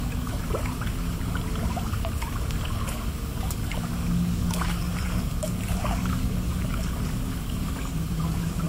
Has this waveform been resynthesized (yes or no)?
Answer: yes